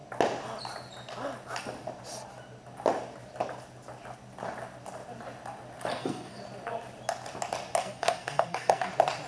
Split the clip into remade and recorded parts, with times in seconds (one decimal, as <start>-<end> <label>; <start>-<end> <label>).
0.0-5.9 recorded; 5.9-6.4 remade; 6.4-7.8 recorded; 7.8-8.9 remade; 8.9-9.3 recorded